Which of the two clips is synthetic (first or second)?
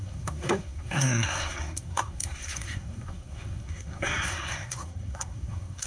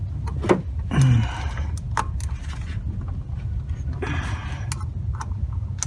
first